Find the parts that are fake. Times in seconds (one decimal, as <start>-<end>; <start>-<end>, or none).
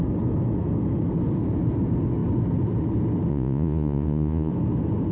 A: 3.3-4.5